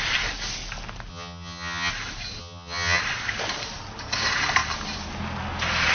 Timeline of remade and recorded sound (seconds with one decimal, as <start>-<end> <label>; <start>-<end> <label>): 0.0-1.1 recorded; 1.1-1.9 remade; 1.9-2.4 recorded; 2.4-3.0 remade; 3.0-5.9 recorded